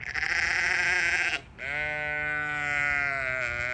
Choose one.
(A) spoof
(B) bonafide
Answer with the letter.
B